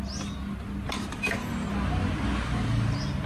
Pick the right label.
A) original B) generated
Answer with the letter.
A